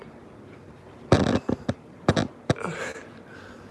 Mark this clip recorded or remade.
recorded